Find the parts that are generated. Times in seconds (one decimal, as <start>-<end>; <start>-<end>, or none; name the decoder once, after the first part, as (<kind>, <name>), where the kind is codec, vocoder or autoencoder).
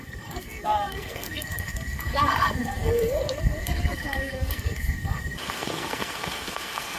0.0-7.0 (codec, SNAC)